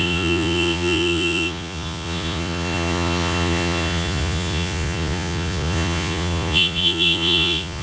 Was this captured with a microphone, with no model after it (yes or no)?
no